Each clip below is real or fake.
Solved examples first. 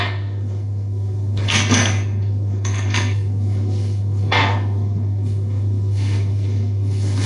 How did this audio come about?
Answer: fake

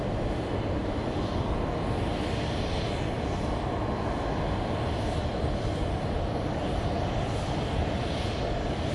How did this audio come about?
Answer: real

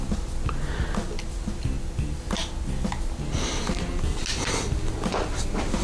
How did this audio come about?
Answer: real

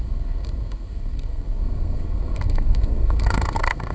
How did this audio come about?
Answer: fake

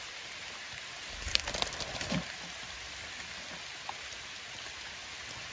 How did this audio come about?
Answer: real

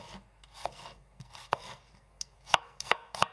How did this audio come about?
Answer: fake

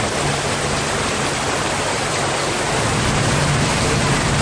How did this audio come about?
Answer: real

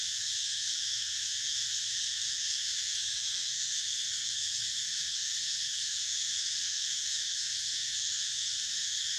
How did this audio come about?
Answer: fake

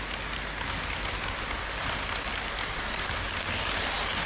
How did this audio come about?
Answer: real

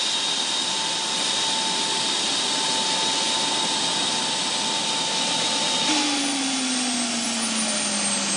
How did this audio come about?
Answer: real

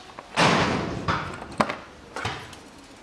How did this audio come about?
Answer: real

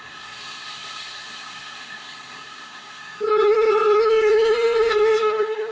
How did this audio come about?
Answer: fake